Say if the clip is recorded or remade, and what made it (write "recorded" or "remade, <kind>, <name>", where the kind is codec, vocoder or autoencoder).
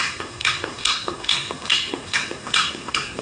remade, codec, SNAC